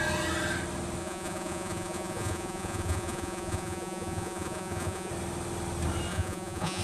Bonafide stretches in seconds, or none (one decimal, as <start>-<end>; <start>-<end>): 0.0-1.0; 5.1-6.1